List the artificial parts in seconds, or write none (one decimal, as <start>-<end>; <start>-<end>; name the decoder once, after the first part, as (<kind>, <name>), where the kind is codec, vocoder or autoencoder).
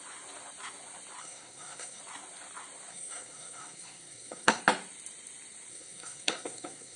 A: 1.2-2.0 (codec, SNAC); 2.9-4.6; 5.7-7.0